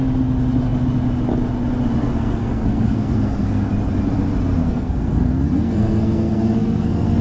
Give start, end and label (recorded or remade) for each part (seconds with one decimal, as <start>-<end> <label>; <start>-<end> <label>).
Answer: 0.0-2.0 recorded; 2.0-3.7 remade; 3.7-4.6 recorded; 4.6-7.2 remade